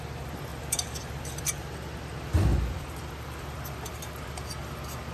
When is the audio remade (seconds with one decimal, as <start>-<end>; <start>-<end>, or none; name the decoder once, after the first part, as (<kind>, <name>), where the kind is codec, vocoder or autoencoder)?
0.5-1.4 (vocoder, BigVGAN v2); 2.5-4.5